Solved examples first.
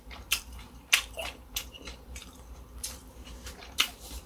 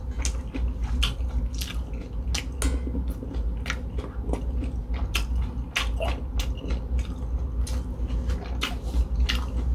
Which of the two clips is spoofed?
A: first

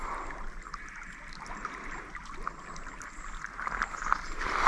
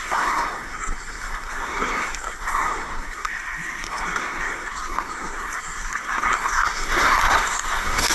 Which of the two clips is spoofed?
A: second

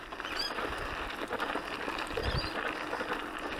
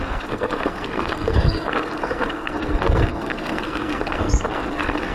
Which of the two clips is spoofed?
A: second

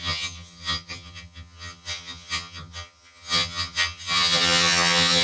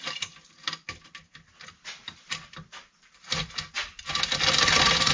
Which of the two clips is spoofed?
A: first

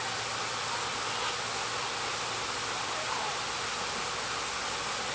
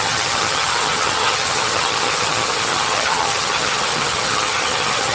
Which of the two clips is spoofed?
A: second